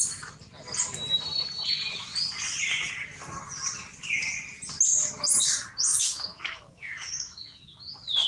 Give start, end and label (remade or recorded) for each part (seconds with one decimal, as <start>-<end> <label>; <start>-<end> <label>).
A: 0.0-5.9 recorded; 5.9-7.8 remade; 7.8-8.3 recorded